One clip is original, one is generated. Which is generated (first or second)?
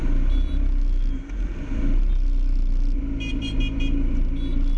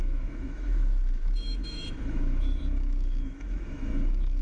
second